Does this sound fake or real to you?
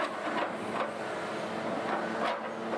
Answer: real